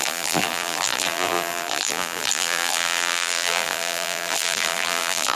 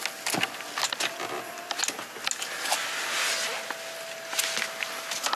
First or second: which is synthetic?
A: first